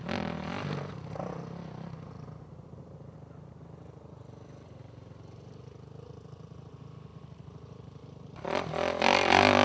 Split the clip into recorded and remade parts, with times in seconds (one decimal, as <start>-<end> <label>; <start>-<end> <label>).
0.0-9.6 recorded